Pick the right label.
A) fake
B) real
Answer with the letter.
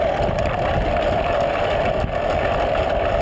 B